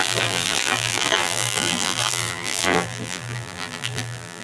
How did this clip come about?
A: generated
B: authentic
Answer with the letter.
A